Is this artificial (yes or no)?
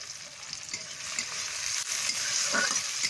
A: no